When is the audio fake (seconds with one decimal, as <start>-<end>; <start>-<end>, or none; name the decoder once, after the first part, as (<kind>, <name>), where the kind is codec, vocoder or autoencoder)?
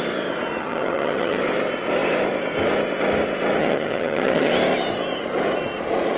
0.6-1.4 (vocoder, HiFi-GAN); 3.6-4.5